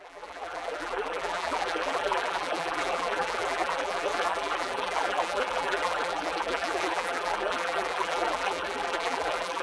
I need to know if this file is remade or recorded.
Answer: remade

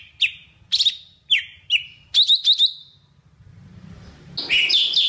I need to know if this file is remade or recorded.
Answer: recorded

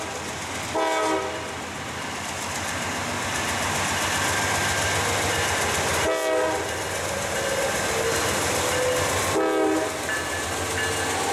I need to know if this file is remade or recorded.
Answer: recorded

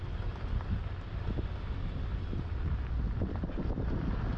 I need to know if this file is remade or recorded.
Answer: recorded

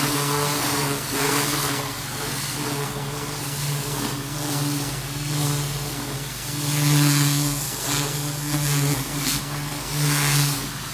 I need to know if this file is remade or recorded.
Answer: remade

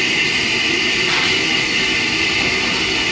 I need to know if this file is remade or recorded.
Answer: recorded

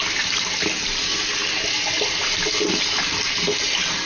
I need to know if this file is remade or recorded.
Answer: recorded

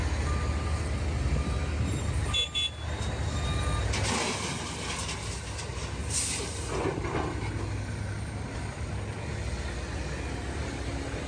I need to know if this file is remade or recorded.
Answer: recorded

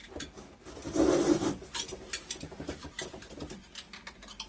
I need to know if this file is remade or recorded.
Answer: recorded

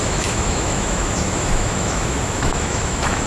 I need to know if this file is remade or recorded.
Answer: remade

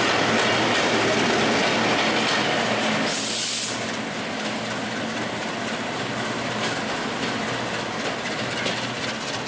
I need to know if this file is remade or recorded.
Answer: recorded